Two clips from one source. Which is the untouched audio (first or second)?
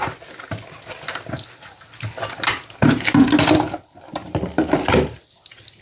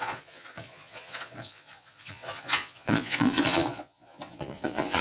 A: first